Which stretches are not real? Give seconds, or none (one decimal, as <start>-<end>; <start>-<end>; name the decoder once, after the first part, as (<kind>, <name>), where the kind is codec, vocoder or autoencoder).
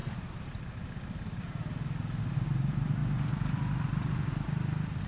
0.0-0.8 (vocoder, BigVGAN v2)